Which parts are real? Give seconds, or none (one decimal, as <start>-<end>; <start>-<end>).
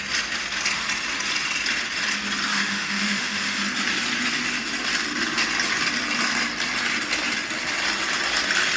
0.0-2.5; 3.6-8.8